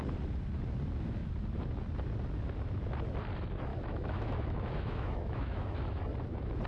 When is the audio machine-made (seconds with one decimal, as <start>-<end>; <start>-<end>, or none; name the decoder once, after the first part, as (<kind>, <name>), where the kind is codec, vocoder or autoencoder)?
3.7-6.0 (autoencoder, DAC-VAE)